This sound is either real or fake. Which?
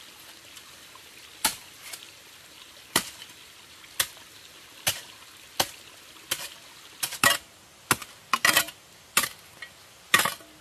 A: real